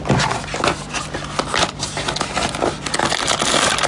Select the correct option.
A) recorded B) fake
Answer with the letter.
A